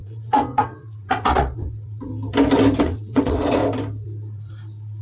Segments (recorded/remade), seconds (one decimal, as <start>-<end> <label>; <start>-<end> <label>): 0.0-2.1 remade; 2.1-2.8 recorded; 2.8-3.6 remade; 3.6-5.0 recorded